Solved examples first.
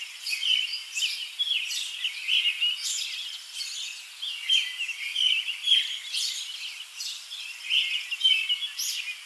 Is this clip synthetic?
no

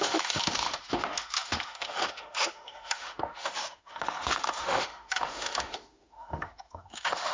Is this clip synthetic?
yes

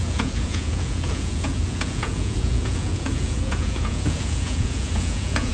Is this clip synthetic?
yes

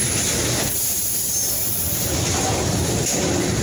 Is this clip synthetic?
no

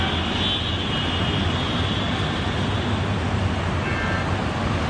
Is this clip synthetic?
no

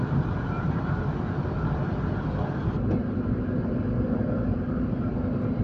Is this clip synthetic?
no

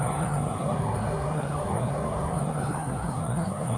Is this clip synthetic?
yes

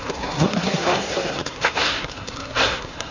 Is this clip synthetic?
yes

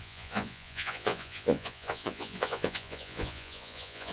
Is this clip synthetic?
yes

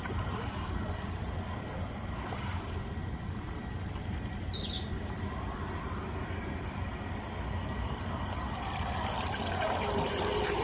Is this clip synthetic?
no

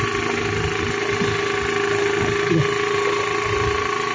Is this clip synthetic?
no